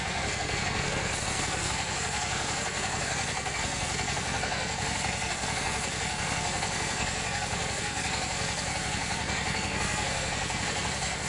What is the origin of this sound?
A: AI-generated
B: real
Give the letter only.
A